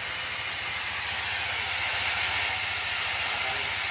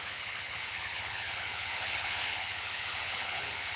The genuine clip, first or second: first